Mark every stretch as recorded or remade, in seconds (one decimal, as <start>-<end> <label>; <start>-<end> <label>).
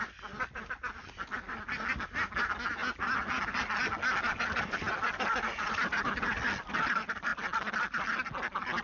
0.0-8.8 recorded